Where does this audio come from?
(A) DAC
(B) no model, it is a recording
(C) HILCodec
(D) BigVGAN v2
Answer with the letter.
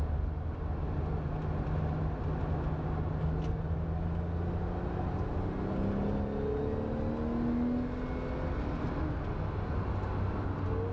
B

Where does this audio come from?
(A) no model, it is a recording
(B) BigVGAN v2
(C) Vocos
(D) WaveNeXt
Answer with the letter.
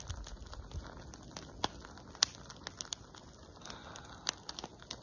A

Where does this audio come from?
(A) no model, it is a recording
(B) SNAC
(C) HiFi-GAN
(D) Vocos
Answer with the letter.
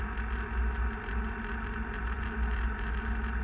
A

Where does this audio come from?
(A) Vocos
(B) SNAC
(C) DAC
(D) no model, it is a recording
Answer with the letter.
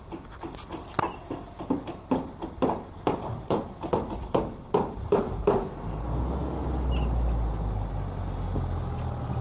D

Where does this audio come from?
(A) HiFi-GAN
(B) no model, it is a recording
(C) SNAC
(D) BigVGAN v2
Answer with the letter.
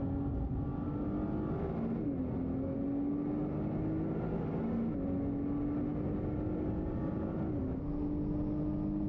B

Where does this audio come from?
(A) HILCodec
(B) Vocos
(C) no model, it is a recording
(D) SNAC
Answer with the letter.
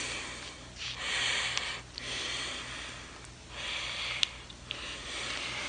C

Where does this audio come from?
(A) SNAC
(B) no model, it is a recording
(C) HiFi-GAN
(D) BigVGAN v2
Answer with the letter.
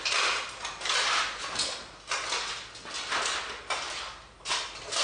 B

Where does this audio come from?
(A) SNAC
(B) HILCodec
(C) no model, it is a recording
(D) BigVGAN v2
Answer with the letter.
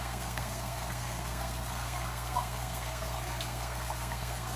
A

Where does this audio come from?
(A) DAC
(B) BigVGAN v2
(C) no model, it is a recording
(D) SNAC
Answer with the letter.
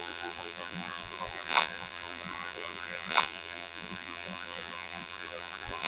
B